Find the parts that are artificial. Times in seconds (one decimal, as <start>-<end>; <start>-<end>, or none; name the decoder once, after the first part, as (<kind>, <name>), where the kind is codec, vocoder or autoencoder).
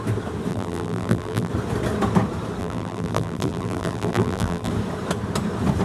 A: 0.5-1.5 (vocoder, BigVGAN v2); 2.6-4.7